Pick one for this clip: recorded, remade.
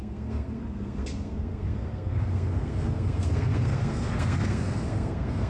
remade